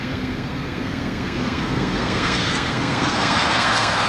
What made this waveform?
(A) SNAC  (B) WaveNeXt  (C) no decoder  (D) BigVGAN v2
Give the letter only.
A